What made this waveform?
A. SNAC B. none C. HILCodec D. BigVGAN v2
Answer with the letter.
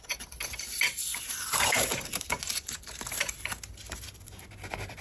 B